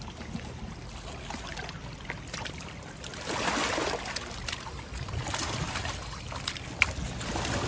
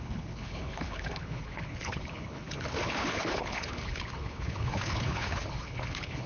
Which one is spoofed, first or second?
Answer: second